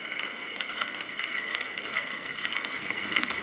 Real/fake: fake